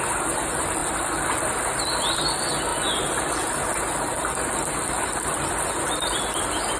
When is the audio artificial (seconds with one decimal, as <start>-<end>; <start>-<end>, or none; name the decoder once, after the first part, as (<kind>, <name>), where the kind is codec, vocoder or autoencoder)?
none